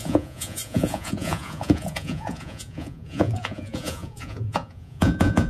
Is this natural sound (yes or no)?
no